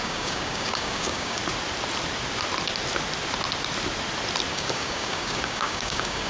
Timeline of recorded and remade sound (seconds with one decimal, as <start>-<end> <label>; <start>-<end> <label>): 0.0-1.4 remade; 1.4-4.5 recorded; 4.5-6.3 remade

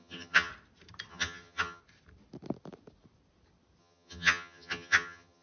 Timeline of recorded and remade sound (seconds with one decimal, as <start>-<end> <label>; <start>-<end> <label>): 0.0-0.5 remade; 0.5-1.1 recorded; 1.1-1.8 remade; 1.8-3.8 recorded; 3.8-5.4 remade

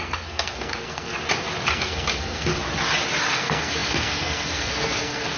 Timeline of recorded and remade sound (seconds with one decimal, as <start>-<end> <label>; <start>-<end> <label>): 0.0-1.1 remade; 1.1-1.7 recorded; 1.7-2.5 remade; 2.5-3.3 recorded; 3.3-5.4 remade

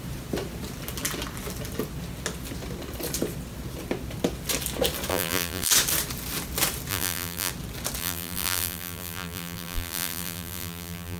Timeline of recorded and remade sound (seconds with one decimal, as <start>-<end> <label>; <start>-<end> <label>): 0.0-5.1 recorded; 5.1-5.7 remade; 5.7-6.9 recorded; 6.9-7.5 remade; 7.5-8.0 recorded; 8.0-11.2 remade

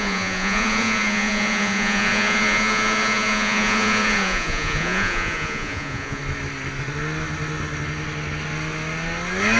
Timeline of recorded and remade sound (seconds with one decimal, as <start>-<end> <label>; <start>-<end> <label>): 0.0-6.2 remade; 6.2-9.6 recorded